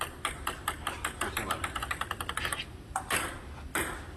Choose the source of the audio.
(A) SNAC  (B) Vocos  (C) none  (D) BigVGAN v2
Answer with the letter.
C